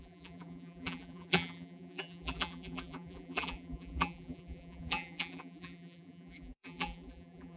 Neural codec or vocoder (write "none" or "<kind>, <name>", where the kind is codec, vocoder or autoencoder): vocoder, BigVGAN v2